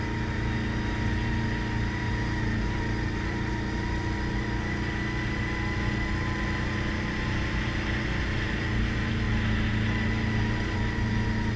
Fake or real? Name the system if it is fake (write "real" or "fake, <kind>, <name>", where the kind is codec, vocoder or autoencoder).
real